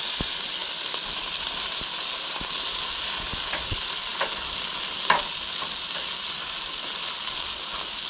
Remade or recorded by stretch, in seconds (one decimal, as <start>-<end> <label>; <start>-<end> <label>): 0.0-8.1 recorded